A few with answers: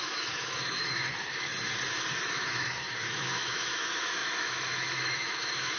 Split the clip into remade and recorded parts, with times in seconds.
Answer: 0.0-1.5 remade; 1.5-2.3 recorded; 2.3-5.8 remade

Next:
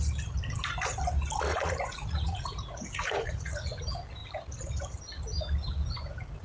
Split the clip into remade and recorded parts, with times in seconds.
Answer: 0.0-1.5 recorded; 1.5-3.8 remade; 3.8-6.4 recorded

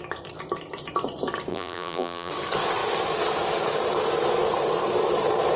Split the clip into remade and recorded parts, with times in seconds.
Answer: 0.0-1.5 recorded; 1.5-2.3 remade; 2.3-5.6 recorded

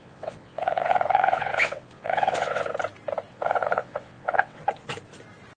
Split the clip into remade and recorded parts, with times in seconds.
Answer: 0.0-2.7 remade; 2.7-3.3 recorded; 3.3-4.6 remade; 4.6-5.6 recorded

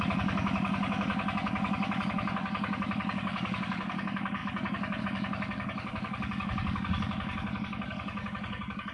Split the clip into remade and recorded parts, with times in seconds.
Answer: 0.0-8.9 remade

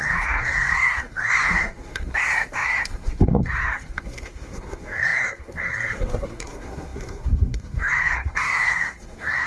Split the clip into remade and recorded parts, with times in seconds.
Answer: 0.0-9.5 remade